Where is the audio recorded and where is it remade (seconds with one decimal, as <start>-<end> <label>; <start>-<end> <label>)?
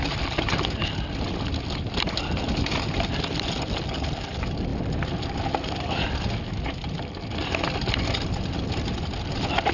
0.0-4.7 remade; 4.7-9.7 recorded